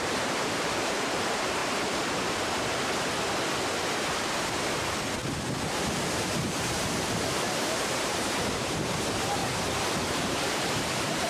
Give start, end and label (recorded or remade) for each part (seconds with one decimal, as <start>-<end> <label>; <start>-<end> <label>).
0.0-1.6 remade; 1.6-4.2 recorded; 4.2-5.2 remade; 5.2-6.1 recorded; 6.1-9.4 remade; 9.4-10.1 recorded; 10.1-11.3 remade